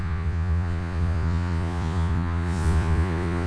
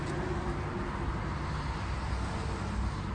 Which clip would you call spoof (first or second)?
first